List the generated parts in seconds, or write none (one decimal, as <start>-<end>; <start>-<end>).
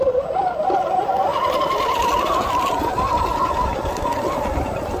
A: none